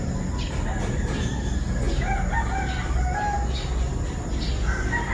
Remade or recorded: recorded